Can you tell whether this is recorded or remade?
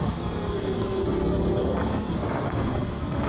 remade